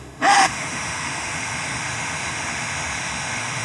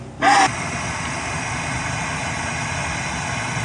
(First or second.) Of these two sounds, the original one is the second